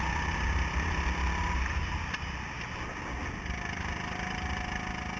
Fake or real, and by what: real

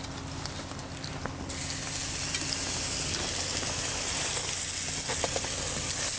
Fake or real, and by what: real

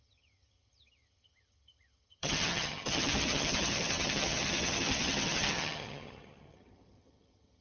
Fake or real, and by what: fake, vocoder, HiFi-GAN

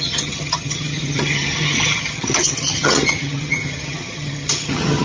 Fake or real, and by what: fake, vocoder, HiFi-GAN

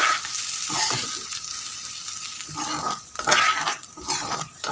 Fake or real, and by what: real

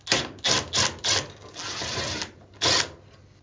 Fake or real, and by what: real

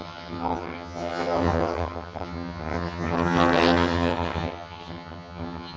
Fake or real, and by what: fake, vocoder, HiFi-GAN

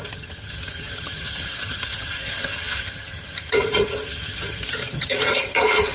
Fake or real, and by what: fake, vocoder, HiFi-GAN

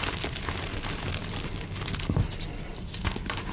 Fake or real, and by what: real